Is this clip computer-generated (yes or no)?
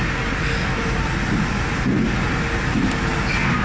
no